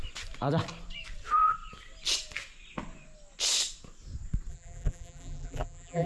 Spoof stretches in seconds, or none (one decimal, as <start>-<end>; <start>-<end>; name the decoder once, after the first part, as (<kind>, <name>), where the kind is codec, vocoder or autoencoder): 4.5-6.1 (vocoder, BigVGAN v2)